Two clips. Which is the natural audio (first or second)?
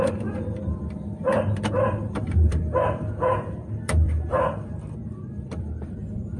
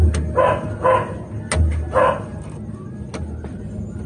second